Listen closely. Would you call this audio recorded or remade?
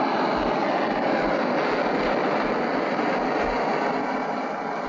recorded